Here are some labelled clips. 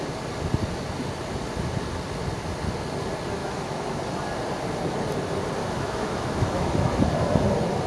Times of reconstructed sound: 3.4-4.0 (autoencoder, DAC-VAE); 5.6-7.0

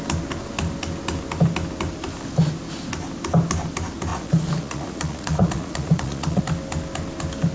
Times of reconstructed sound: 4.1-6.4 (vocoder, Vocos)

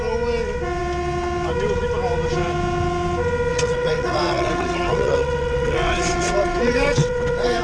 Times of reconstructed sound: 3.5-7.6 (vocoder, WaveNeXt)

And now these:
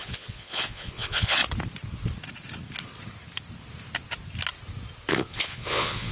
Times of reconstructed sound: 0.0-1.4 (vocoder, Vocos); 5.1-6.1

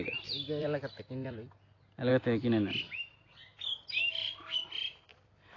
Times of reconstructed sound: 0.6-1.5 (vocoder, BigVGAN v2); 2.1-3.1; 4.6-5.1

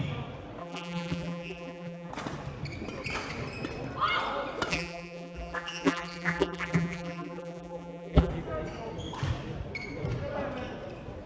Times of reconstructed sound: 0.6-2.1 (vocoder, BigVGAN v2); 4.7-8.3

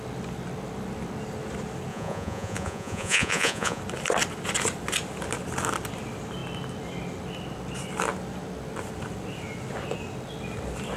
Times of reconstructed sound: 1.9-3.8 (vocoder, Vocos)